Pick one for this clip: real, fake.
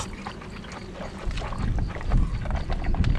real